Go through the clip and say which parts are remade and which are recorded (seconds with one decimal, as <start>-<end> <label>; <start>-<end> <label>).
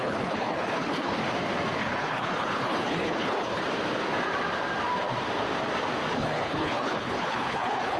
0.0-1.2 remade; 1.2-1.8 recorded; 1.8-3.6 remade; 3.6-6.1 recorded; 6.1-8.0 remade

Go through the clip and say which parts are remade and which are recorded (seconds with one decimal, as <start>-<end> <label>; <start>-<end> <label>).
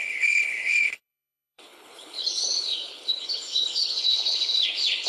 0.0-5.1 remade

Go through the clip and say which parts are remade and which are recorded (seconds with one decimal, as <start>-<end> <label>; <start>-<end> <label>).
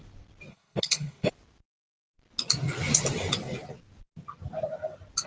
0.0-0.5 recorded; 0.5-1.3 remade; 1.3-5.3 recorded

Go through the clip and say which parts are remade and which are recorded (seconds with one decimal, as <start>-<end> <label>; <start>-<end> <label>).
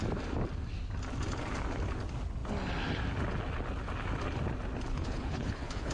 0.0-4.9 recorded; 4.9-5.9 remade